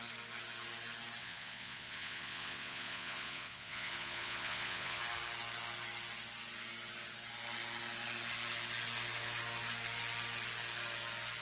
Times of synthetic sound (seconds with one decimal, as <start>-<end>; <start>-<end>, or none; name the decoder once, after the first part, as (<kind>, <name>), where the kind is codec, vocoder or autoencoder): 1.2-5.0 (vocoder, Vocos)